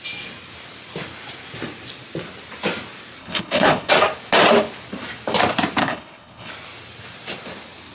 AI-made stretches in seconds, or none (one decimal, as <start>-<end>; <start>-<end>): 3.2-3.9; 5.8-6.5

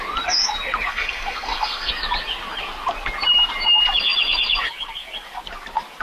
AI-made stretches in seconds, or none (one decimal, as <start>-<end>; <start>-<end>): 0.9-1.9

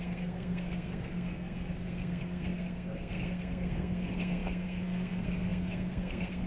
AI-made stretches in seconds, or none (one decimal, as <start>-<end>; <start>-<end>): 0.0-6.5

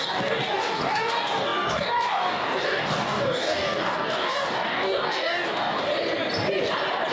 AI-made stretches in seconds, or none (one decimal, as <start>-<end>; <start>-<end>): 0.0-5.9

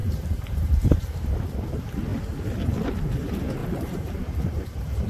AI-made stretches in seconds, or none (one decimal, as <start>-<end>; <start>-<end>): 0.0-1.3; 3.6-5.1

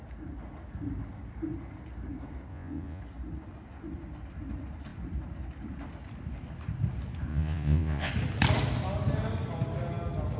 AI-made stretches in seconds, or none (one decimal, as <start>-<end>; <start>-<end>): 2.5-3.0; 7.3-8.1